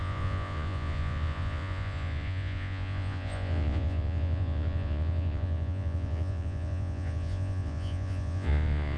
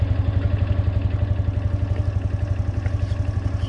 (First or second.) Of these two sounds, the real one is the second